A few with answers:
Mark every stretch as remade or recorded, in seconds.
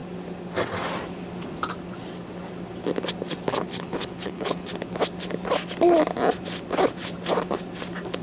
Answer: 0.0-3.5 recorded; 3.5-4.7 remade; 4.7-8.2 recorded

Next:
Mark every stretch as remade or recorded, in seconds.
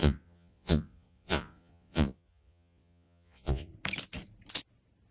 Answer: 0.0-3.7 remade; 3.7-5.1 recorded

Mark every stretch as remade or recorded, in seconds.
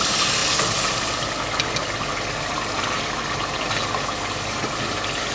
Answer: 0.0-5.3 recorded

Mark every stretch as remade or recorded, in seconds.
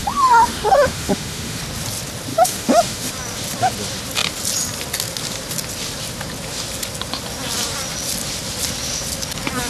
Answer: 0.0-1.6 remade; 1.6-2.3 recorded; 2.3-3.1 remade; 3.1-9.7 recorded